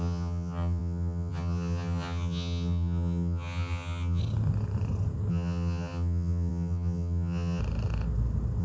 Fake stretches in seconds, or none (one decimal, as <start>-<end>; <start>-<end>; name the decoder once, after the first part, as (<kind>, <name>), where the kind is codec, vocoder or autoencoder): 0.0-4.2 (vocoder, HiFi-GAN); 5.3-7.6